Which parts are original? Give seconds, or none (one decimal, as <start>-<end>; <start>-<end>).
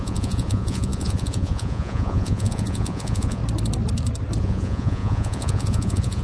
3.4-4.4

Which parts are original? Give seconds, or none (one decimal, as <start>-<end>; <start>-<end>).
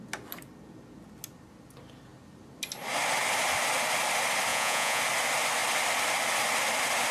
0.0-4.5; 5.0-7.1